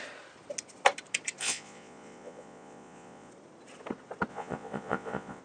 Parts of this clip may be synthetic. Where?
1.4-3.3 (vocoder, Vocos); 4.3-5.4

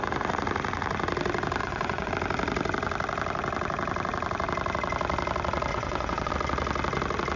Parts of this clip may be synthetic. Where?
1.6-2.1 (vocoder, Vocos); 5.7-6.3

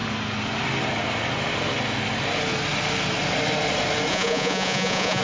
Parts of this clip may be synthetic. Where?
4.1-5.2 (vocoder, Vocos)

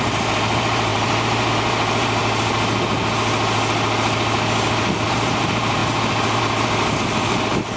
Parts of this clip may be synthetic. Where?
0.0-2.2 (vocoder, BigVGAN v2); 5.1-5.8; 6.4-7.8